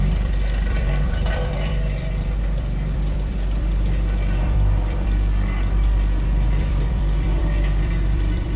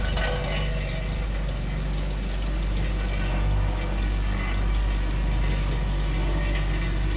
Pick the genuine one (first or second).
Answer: second